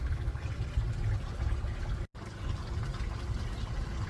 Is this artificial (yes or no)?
no